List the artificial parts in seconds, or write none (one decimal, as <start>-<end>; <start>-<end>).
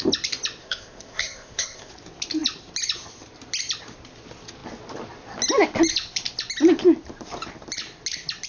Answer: 0.6-1.9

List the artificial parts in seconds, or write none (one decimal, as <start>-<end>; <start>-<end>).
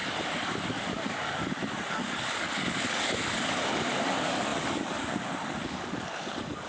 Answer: 0.0-6.7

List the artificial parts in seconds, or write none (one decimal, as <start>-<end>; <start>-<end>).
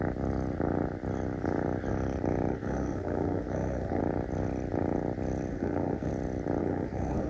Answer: 2.5-4.0; 5.5-6.1; 6.6-7.3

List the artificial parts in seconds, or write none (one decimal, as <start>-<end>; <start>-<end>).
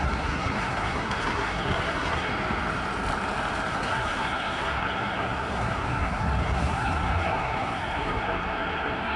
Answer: 0.0-2.3; 3.7-9.2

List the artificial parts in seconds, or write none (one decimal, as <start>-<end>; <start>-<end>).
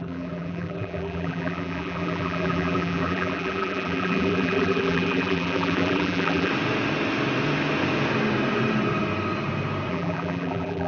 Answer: 0.0-6.5; 9.9-10.9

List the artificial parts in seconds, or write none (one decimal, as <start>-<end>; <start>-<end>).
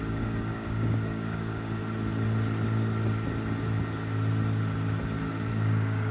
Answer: 0.0-1.8; 5.5-6.1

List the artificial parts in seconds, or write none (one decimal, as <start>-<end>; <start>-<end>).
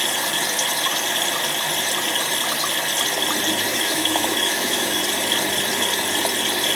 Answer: 3.7-5.0